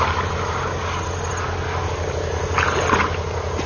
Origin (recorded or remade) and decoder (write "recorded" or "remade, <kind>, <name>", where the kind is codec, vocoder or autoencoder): recorded